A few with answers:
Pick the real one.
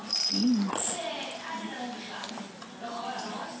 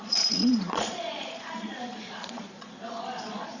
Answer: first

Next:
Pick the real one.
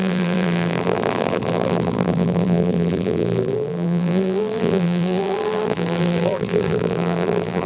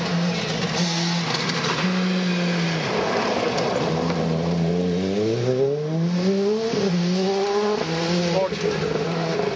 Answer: second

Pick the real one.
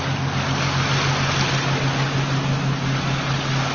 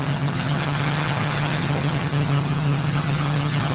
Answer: first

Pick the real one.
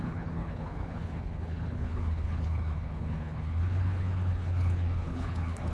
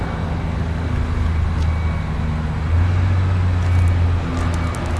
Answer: second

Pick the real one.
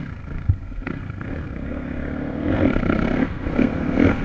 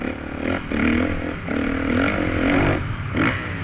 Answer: second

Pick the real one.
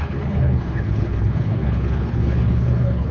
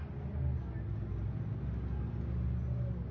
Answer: second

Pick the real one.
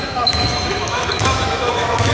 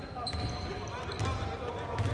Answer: second